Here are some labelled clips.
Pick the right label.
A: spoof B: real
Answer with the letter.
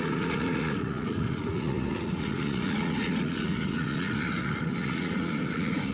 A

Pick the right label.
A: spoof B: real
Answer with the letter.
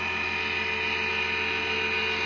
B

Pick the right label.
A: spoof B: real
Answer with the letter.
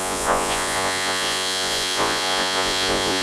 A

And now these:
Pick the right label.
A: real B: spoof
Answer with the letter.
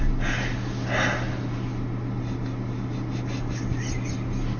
A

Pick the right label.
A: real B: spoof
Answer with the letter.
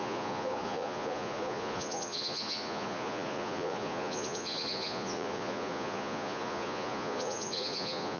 B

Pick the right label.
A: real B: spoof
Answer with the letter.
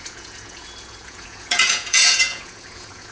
B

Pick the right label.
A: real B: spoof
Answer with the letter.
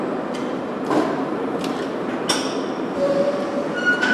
A